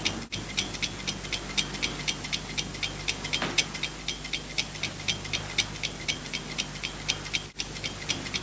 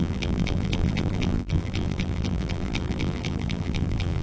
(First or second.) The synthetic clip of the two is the second